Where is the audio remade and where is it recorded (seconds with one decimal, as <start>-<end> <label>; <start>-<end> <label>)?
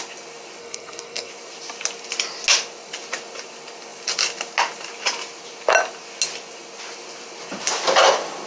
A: 0.0-0.6 recorded; 0.6-1.3 remade; 1.3-8.5 recorded